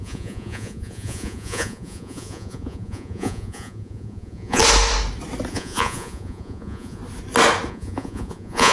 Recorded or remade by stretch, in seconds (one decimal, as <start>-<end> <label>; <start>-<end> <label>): 0.0-4.6 remade; 4.6-5.5 recorded; 5.5-7.0 remade; 7.0-7.7 recorded; 7.7-8.7 remade